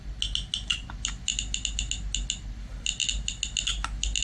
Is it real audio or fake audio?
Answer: real